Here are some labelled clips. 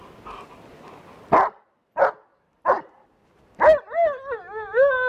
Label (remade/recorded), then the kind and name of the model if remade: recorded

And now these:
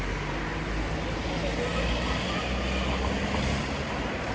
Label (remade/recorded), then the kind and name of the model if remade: recorded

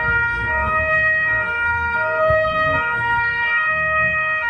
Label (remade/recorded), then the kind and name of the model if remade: remade, codec, SNAC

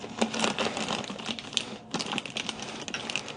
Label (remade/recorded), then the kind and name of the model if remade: recorded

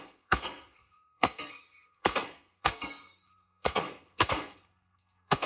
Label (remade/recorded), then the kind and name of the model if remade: remade, codec, SNAC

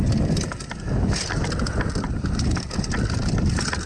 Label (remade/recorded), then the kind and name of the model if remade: recorded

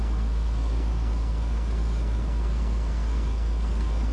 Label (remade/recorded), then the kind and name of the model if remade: remade, codec, SNAC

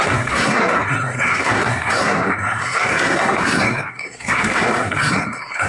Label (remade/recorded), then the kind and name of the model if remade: remade, codec, SNAC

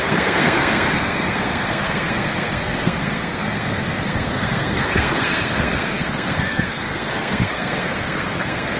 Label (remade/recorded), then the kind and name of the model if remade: remade, codec, SNAC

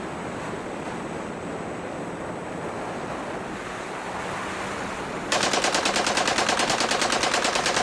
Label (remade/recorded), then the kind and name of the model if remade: recorded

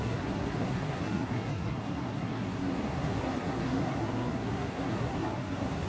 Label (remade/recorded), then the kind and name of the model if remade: remade, codec, SNAC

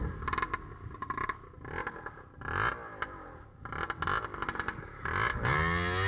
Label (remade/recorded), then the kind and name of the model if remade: recorded